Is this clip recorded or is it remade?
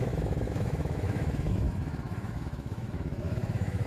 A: remade